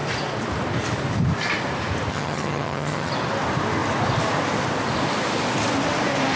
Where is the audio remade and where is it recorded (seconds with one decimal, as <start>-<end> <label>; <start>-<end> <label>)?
0.0-2.1 recorded; 2.1-3.1 remade; 3.1-6.4 recorded